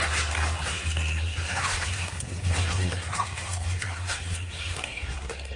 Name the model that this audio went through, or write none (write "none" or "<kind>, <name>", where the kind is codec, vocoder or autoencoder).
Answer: codec, SNAC